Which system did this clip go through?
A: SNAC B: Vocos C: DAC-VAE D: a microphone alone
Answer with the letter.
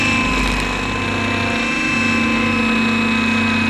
D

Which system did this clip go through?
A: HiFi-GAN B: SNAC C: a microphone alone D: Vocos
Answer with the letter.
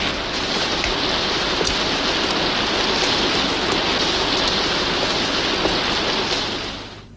C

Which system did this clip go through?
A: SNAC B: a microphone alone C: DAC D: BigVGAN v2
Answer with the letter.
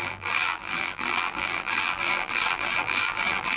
D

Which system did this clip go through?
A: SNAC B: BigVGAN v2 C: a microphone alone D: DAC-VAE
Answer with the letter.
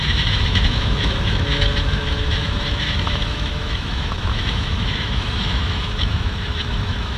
D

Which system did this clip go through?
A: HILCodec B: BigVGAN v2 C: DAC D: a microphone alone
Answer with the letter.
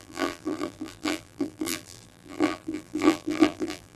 B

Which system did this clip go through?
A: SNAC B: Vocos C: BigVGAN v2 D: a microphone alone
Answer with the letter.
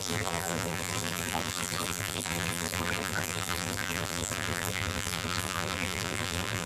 C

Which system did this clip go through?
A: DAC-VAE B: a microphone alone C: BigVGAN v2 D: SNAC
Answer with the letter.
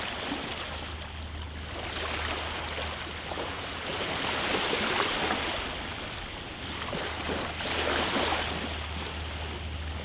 B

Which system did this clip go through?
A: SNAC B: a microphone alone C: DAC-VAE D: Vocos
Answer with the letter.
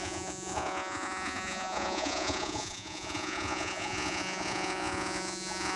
D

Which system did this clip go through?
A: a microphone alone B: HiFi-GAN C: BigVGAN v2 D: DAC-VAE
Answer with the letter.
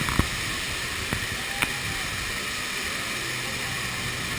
A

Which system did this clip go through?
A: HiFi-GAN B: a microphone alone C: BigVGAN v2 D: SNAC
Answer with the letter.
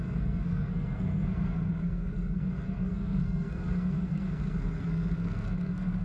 D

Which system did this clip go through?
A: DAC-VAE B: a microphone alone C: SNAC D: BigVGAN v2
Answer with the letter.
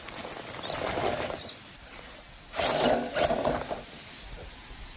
B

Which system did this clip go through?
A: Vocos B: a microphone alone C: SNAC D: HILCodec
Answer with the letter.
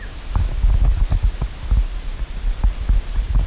B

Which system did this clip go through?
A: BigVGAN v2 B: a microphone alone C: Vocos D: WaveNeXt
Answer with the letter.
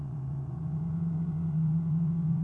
C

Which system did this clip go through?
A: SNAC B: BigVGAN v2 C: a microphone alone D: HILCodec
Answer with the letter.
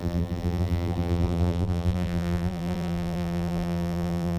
B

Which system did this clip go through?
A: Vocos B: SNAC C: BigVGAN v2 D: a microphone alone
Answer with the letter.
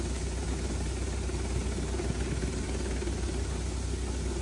D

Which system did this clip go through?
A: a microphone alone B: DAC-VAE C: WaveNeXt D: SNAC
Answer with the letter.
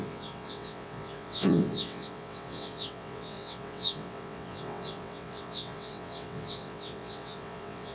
C